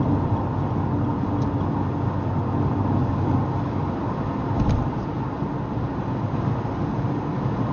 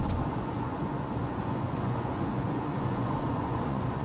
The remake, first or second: second